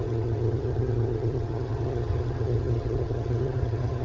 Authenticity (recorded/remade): remade